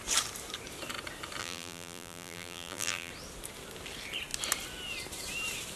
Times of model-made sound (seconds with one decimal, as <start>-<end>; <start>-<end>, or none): 1.4-3.1

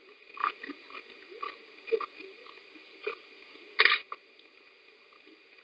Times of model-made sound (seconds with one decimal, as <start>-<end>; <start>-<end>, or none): none

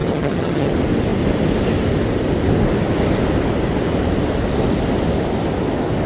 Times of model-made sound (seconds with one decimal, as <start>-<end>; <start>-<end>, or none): 0.0-0.7

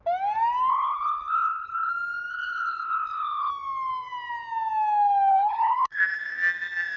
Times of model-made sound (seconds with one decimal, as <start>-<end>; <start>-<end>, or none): 0.7-1.9; 2.3-3.5; 5.3-6.0

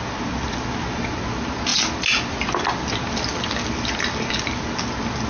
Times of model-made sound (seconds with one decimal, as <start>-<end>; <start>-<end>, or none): none

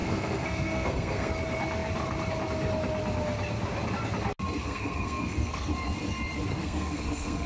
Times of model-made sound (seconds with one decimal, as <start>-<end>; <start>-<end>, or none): 0.0-1.3; 4.6-5.7; 6.5-7.5